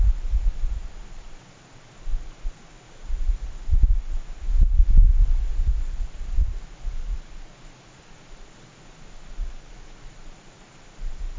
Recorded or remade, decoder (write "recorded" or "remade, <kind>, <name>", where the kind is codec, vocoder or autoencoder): recorded